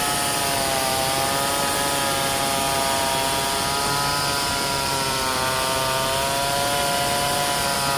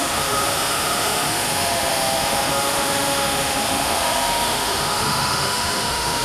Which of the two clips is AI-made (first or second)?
second